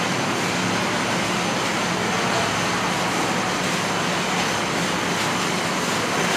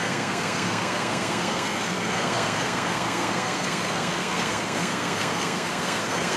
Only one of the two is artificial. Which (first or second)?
second